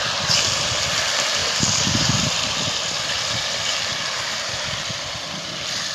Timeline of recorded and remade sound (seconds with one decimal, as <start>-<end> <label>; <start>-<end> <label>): 0.0-1.4 recorded; 1.4-3.4 remade; 3.4-3.9 recorded; 3.9-5.2 remade; 5.2-5.9 recorded